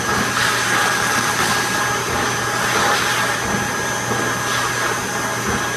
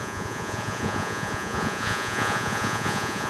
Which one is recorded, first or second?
first